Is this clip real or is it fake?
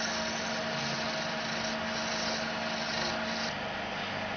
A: real